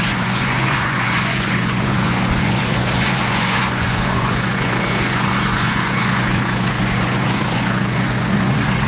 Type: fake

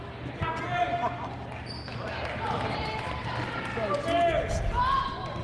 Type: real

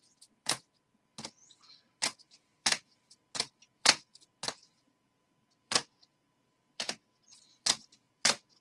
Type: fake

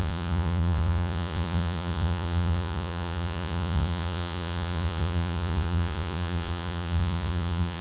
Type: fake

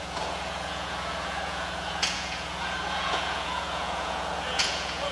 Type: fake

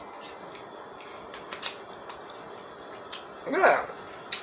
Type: real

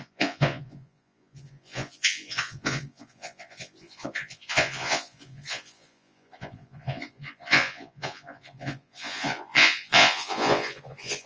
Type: fake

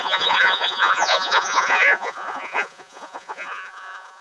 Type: fake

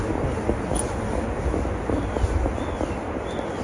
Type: real